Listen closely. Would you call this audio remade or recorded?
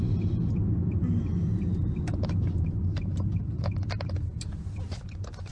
recorded